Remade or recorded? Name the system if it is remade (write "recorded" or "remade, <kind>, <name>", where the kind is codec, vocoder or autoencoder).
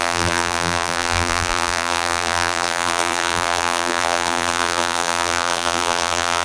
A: remade, vocoder, BigVGAN v2